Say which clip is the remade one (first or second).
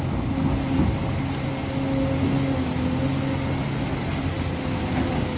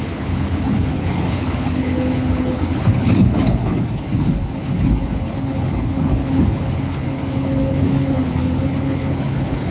second